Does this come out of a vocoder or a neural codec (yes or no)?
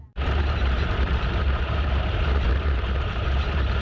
yes